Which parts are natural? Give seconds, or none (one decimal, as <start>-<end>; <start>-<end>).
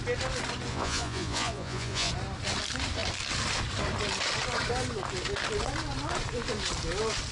0.0-0.7; 2.1-7.3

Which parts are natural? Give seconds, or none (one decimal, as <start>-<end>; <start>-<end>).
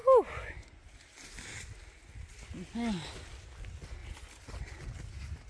0.0-5.5